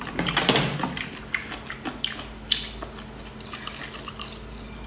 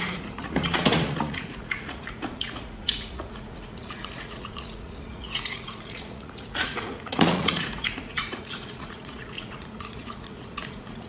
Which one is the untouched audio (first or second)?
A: first